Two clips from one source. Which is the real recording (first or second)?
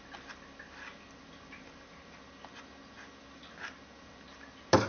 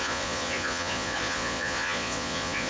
first